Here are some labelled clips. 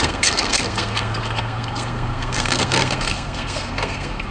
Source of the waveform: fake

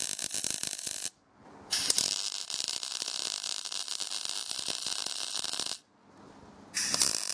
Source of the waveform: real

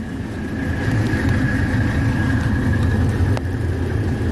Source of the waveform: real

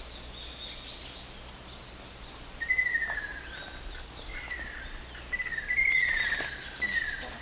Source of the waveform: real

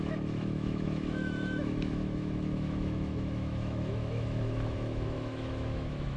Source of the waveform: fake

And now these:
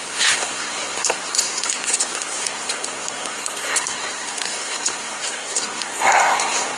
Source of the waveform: fake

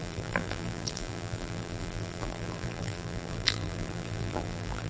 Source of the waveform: fake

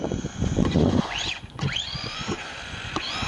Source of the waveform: fake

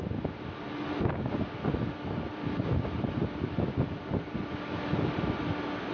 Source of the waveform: real